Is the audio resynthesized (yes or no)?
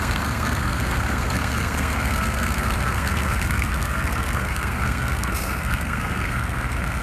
yes